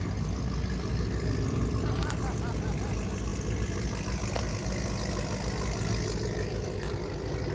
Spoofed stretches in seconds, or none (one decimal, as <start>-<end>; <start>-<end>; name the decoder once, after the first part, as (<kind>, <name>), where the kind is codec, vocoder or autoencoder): none